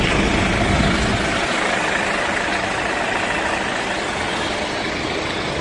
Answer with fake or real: real